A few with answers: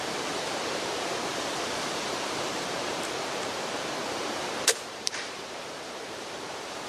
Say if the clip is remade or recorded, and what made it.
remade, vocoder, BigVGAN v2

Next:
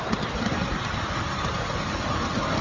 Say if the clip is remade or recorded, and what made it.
remade, vocoder, BigVGAN v2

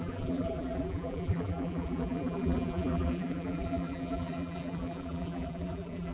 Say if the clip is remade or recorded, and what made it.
remade, vocoder, BigVGAN v2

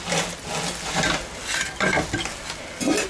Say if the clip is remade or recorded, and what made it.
recorded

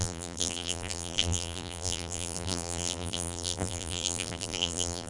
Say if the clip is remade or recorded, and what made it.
remade, vocoder, BigVGAN v2